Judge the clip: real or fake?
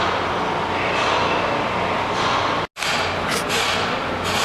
real